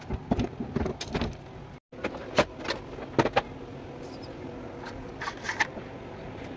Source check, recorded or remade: recorded